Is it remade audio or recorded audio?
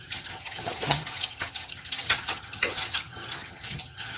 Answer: remade